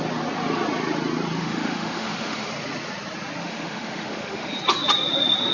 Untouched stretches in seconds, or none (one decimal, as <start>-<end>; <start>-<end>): 0.0-1.4; 2.5-3.4; 4.6-5.5